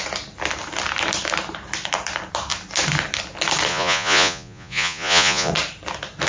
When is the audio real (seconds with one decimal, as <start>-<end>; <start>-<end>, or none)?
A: 0.0-3.7; 5.5-6.3